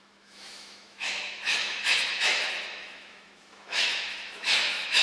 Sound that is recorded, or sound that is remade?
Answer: remade